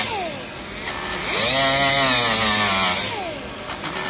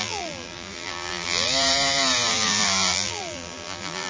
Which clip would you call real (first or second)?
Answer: first